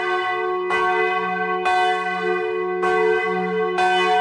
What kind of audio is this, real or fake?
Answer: real